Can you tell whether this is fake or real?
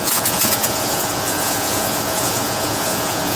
fake